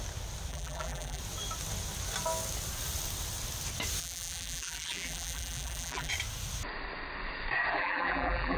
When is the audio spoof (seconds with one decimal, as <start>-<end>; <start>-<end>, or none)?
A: 0.5-1.2; 4.0-6.1; 7.7-8.6